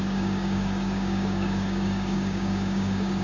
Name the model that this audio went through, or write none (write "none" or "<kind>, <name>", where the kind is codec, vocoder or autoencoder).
codec, DAC